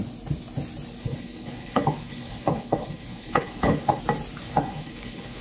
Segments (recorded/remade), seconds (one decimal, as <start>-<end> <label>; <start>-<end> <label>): 0.0-1.0 recorded; 1.0-4.0 remade; 4.0-4.5 recorded; 4.5-5.4 remade